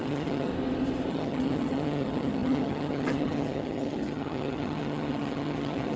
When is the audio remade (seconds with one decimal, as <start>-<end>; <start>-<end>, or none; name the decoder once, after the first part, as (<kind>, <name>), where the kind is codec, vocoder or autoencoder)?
0.0-0.5 (vocoder, HiFi-GAN); 1.1-6.0